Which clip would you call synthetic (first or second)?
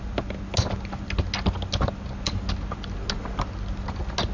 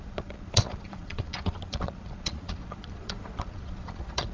second